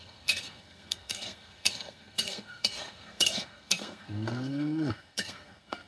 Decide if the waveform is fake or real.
fake